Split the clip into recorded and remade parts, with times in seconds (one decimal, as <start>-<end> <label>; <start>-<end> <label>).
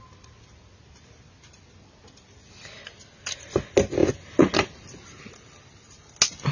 0.0-6.5 recorded